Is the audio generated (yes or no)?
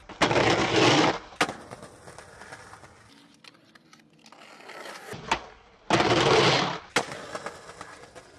no